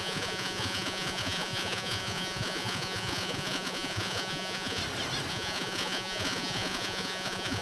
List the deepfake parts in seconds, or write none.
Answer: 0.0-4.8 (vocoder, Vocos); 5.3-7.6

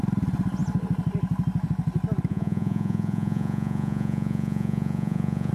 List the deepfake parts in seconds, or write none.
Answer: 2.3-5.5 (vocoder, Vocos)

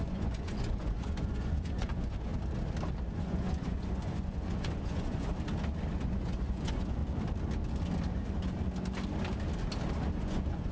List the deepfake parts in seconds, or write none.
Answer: 0.0-2.3 (vocoder, Vocos); 3.1-5.3; 6.0-7.0; 10.2-10.7